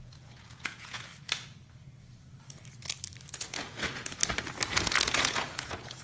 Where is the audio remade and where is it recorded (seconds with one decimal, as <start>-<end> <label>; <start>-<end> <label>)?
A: 0.0-1.1 remade; 1.1-3.3 recorded; 3.3-4.2 remade; 4.2-4.7 recorded; 4.7-6.0 remade